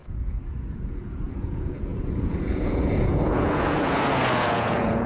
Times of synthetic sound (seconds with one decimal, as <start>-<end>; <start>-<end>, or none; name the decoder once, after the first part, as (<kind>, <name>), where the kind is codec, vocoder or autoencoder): 0.0-5.1 (vocoder, Vocos)